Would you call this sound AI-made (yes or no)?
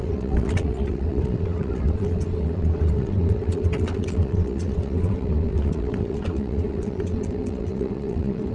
yes